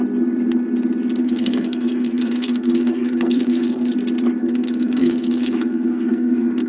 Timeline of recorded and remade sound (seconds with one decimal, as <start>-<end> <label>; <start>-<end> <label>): 0.0-1.2 recorded; 1.2-3.9 remade; 3.9-4.4 recorded; 4.4-6.7 remade

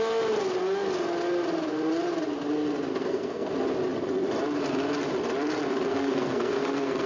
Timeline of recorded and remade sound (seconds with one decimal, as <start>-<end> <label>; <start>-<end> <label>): 0.0-2.9 recorded; 2.9-3.5 remade; 3.5-5.7 recorded; 5.7-7.1 remade

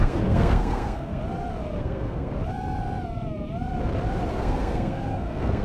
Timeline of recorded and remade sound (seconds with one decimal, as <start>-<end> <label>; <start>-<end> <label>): 0.0-1.2 remade; 1.2-1.8 recorded; 1.8-2.3 remade; 2.3-4.3 recorded; 4.3-5.6 remade

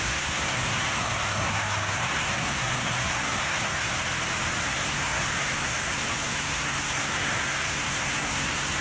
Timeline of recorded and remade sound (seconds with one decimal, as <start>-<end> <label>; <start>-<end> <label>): 0.0-3.9 remade; 3.9-4.6 recorded; 4.6-8.8 remade

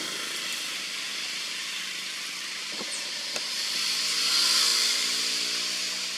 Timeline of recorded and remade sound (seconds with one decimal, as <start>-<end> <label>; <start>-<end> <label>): 0.0-1.1 recorded; 1.1-4.2 remade; 4.2-4.7 recorded; 4.7-6.2 remade